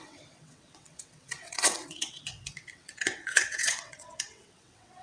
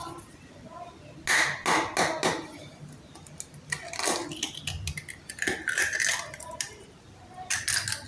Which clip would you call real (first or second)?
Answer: second